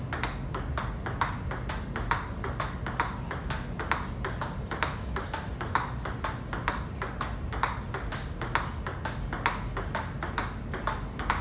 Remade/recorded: recorded